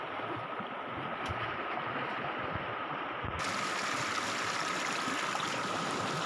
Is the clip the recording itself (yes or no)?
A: yes